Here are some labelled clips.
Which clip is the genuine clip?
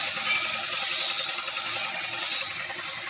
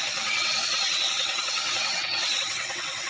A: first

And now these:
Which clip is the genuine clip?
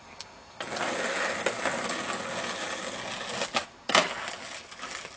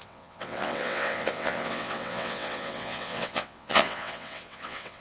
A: first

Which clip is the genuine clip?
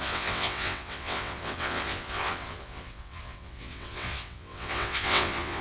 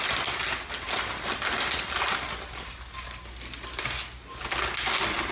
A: second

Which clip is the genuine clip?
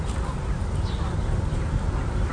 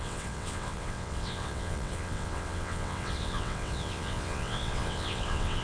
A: first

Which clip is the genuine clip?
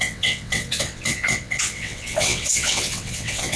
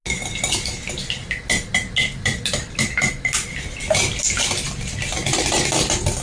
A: second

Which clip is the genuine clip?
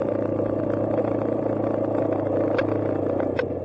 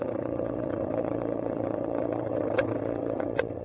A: first